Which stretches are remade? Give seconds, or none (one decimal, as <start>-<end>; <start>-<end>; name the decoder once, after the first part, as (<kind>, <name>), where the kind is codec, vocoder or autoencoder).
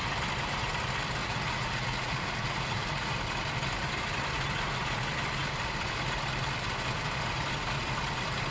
1.2-3.1 (vocoder, Vocos)